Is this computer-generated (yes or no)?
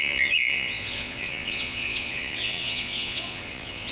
yes